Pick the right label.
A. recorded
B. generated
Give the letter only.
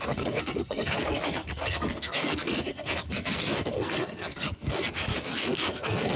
B